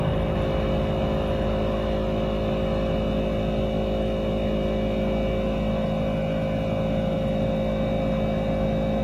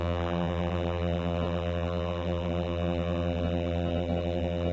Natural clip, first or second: first